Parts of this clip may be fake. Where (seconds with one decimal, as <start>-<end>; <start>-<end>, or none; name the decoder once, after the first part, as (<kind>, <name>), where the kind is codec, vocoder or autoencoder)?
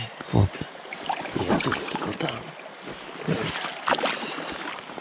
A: none